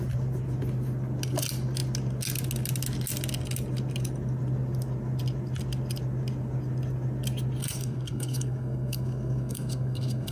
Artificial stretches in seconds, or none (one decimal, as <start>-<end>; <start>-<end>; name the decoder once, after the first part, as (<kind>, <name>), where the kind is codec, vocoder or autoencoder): 7.6-10.3 (codec, SNAC)